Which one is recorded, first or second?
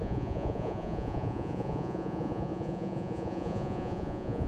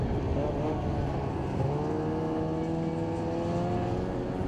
second